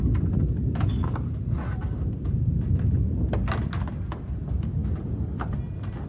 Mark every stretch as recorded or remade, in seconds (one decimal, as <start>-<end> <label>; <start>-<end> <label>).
0.0-6.1 recorded

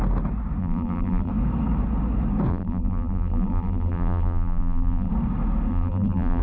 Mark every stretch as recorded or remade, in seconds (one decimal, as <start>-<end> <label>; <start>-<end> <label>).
0.0-0.6 recorded; 0.6-1.3 remade; 1.3-2.5 recorded; 2.5-5.1 remade; 5.1-5.7 recorded; 5.7-6.4 remade

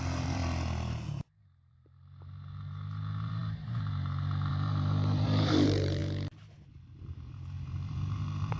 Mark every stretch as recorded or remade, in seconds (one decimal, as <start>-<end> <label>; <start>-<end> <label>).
0.0-0.4 remade; 0.4-1.2 recorded; 1.2-6.0 remade; 6.0-6.7 recorded; 6.7-8.6 remade

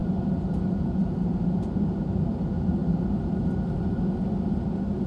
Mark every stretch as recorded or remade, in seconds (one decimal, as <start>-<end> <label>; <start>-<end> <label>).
0.0-2.4 remade; 2.4-5.1 recorded

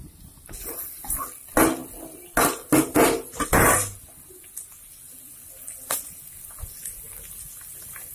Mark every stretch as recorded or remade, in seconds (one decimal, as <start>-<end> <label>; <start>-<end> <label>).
0.0-8.1 recorded

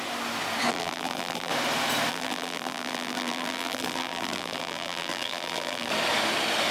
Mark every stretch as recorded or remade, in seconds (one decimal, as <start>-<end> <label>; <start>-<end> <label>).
0.0-0.7 recorded; 0.7-1.5 remade; 1.5-2.1 recorded; 2.1-5.9 remade; 5.9-6.7 recorded

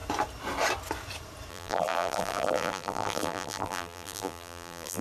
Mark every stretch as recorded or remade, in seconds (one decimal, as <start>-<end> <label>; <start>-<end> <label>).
0.0-1.5 recorded; 1.5-5.0 remade